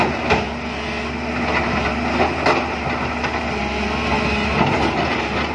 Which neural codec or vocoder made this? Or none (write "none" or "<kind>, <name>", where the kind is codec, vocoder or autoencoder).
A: none